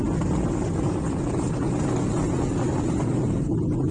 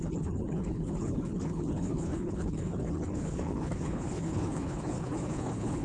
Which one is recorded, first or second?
first